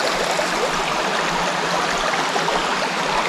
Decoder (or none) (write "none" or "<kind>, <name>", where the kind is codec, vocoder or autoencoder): none